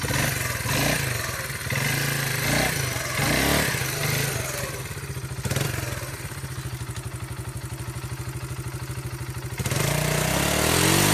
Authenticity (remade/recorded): recorded